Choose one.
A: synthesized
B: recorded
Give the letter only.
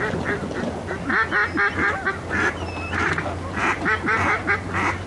B